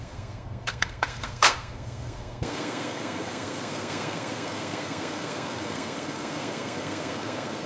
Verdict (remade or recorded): remade